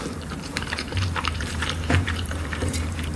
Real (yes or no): no